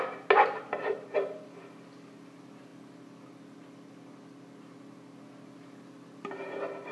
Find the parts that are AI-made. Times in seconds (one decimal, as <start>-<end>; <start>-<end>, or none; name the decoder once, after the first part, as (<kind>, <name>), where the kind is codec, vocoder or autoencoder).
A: none

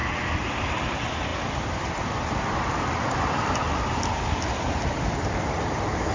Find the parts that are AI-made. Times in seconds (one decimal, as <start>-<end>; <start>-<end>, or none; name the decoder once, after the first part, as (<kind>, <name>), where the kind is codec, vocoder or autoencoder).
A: 0.5-3.6 (vocoder, BigVGAN v2); 5.3-6.1

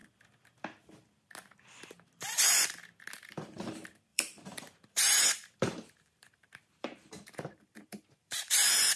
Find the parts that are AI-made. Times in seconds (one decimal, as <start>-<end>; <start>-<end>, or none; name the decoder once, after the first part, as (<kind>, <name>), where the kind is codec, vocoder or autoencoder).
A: 4.1-9.0 (vocoder, BigVGAN v2)

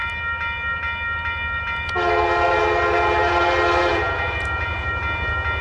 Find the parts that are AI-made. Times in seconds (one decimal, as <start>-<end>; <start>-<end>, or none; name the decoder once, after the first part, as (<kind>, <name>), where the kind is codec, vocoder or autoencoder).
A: 3.9-4.9 (vocoder, Vocos)

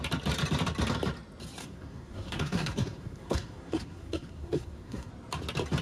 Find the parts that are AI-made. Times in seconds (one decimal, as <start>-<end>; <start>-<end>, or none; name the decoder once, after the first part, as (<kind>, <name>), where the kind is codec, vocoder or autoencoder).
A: 1.6-5.1 (codec, SNAC)